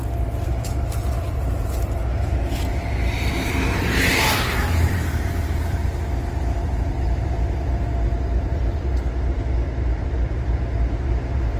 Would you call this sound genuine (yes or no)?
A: no